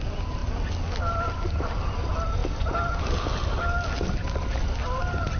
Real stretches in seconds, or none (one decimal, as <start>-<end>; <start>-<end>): 0.0-5.4

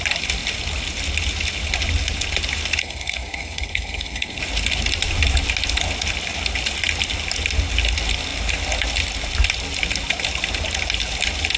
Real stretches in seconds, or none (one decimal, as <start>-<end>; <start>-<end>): 0.0-2.8; 4.4-11.6